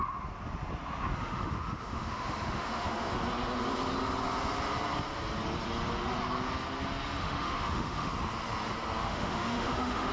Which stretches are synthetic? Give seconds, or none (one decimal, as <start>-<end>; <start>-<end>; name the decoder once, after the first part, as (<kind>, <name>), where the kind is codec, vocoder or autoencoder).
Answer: 1.2-3.1 (autoencoder, DAC-VAE); 7.2-8.1; 9.1-10.1